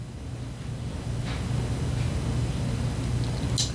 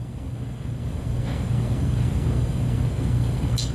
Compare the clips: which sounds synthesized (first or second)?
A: second